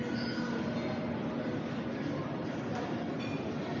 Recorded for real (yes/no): yes